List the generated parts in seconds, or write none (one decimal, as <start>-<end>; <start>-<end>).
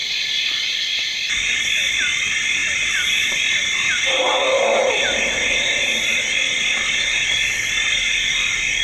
none